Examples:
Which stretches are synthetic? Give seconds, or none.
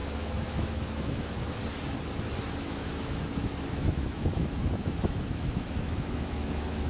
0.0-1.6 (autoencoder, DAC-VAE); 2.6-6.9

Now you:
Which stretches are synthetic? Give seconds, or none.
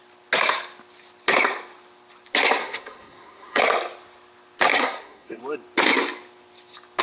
2.6-3.6 (codec, SNAC); 4.7-5.4